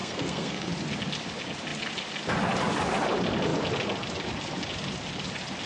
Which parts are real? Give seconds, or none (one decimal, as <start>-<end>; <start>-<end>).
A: 0.7-5.7